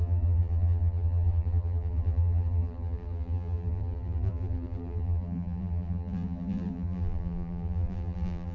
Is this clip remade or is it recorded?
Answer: remade